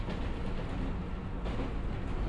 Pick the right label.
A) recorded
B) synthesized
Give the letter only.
A